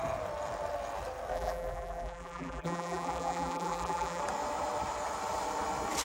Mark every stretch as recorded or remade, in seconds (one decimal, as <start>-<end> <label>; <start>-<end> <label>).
0.0-1.3 recorded; 1.3-4.2 remade; 4.2-6.0 recorded